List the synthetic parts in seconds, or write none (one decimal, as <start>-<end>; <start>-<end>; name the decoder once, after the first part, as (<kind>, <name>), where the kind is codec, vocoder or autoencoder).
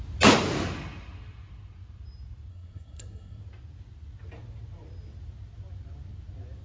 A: 2.5-3.4 (codec, SNAC)